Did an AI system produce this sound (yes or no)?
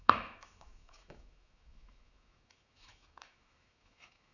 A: yes